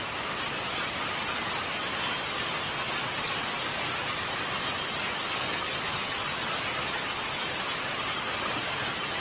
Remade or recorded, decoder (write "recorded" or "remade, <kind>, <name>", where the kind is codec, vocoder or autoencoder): recorded